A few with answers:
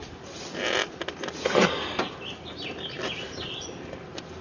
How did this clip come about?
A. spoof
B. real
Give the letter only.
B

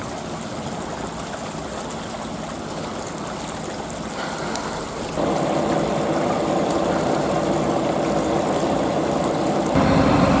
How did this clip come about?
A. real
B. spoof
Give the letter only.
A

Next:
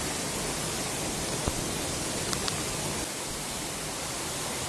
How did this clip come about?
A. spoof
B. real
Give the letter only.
B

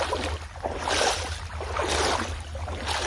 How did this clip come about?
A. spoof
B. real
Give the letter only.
B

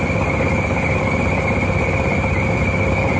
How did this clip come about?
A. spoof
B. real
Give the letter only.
B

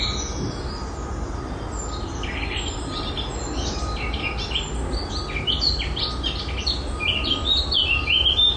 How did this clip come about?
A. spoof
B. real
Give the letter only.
B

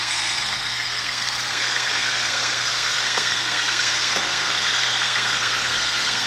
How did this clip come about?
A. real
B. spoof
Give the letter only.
B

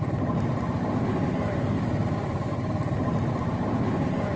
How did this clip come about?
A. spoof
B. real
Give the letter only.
B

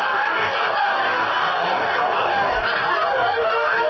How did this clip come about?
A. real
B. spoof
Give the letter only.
B